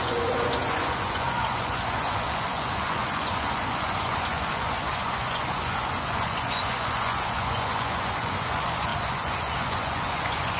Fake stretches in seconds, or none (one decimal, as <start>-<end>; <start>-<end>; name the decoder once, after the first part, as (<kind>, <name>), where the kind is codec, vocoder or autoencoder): 0.0-10.6 (vocoder, Vocos)